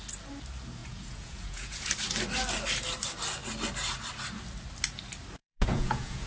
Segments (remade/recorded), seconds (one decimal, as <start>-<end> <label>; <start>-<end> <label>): 0.0-0.8 recorded; 0.8-1.9 remade; 1.9-5.4 recorded; 5.4-6.3 remade